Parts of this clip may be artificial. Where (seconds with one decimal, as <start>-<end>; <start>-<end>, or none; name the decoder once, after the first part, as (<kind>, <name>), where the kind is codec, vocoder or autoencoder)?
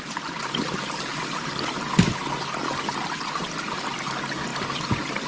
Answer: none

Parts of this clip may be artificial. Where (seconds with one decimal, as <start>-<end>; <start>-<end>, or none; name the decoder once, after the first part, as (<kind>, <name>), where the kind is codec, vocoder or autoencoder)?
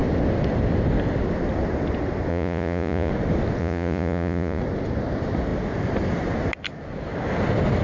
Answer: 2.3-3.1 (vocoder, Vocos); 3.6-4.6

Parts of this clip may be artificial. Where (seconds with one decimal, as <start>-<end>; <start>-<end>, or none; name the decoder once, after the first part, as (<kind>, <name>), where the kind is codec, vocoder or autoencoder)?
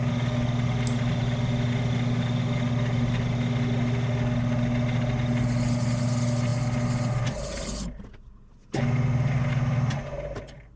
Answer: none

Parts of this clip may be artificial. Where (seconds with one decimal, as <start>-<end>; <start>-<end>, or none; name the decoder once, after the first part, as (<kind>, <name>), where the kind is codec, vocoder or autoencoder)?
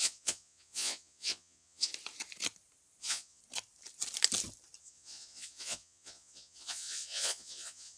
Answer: 0.0-1.9 (vocoder, Vocos); 3.0-3.4; 4.8-8.0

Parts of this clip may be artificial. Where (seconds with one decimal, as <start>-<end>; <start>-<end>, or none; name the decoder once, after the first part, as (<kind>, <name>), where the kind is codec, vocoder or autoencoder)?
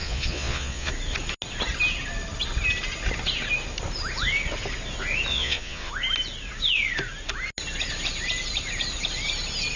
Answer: 0.0-0.9 (vocoder, Vocos); 5.3-5.9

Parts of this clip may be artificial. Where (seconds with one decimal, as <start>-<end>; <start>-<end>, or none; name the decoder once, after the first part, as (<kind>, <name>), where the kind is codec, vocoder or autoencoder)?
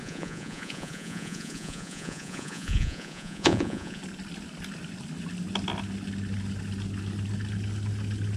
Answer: 0.0-4.0 (vocoder, Vocos)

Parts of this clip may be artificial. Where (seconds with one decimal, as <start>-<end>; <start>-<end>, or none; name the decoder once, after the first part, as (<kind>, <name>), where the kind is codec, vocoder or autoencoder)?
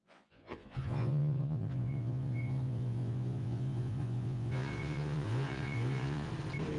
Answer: 0.0-6.3 (vocoder, Vocos)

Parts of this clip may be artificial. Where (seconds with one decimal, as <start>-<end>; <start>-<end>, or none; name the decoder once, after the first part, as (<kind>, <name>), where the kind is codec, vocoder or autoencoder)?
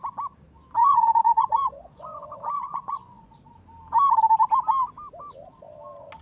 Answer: 0.8-3.3 (vocoder, Vocos)